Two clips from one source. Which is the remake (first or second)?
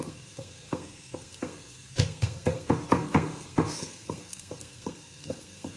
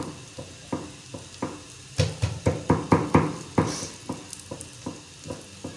first